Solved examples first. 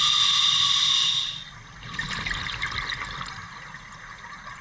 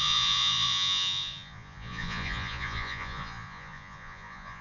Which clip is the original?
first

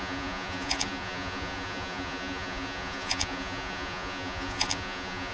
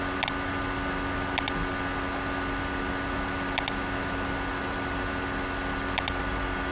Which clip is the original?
second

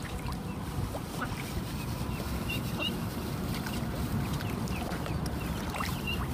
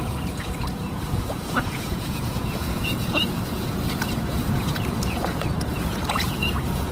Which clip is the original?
first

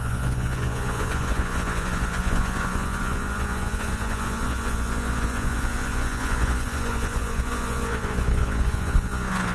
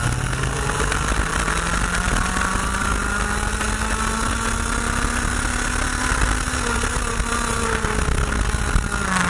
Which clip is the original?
second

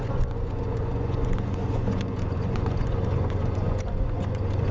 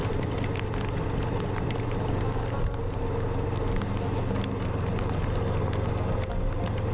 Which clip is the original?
second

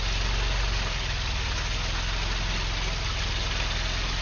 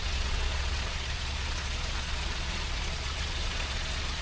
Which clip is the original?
first